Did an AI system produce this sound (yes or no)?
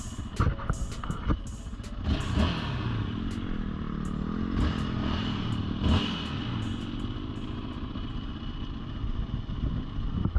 no